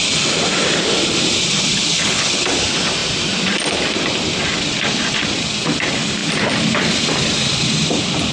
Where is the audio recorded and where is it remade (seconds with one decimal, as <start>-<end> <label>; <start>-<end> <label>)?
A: 0.0-1.7 recorded; 1.7-2.5 remade; 2.5-8.3 recorded